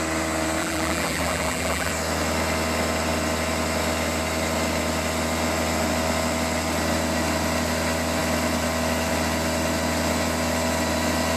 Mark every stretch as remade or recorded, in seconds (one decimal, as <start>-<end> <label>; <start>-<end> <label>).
0.0-0.6 recorded; 0.6-1.9 remade; 1.9-11.4 recorded